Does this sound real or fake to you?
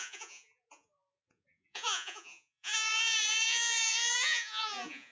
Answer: fake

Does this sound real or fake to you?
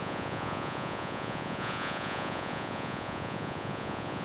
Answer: fake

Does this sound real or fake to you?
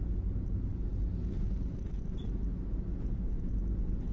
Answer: real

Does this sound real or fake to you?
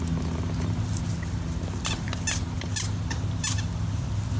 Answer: real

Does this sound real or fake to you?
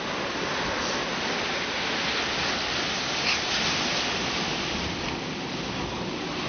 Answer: real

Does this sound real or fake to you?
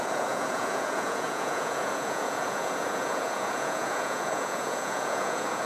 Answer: fake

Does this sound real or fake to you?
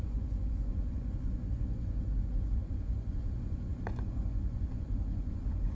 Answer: fake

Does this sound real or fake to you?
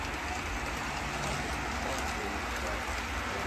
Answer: real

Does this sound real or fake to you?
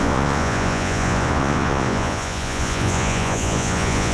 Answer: fake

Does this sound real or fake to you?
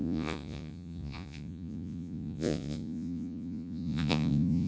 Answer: fake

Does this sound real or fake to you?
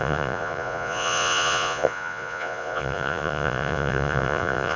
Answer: fake